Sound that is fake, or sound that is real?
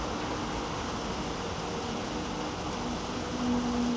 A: real